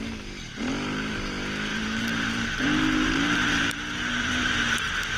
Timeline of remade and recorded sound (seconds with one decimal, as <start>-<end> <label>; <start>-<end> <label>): 0.0-1.7 recorded; 1.7-4.8 remade; 4.8-5.2 recorded